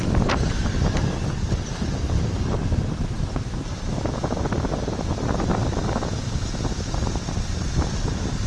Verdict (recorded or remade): recorded